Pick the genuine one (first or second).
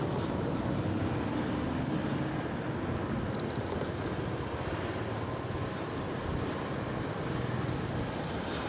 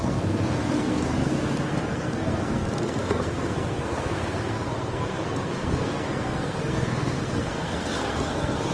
first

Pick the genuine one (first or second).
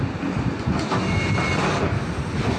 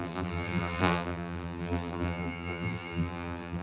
first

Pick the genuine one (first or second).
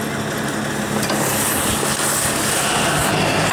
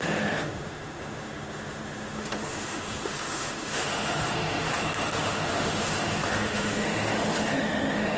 first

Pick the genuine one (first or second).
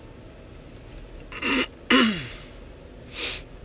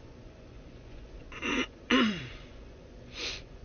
first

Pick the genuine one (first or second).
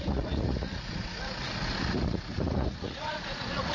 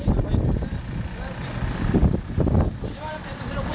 second